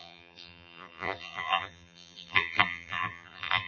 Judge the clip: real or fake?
fake